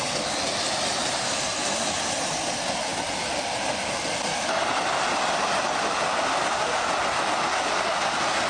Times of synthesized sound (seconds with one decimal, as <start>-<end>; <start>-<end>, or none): 1.0-1.6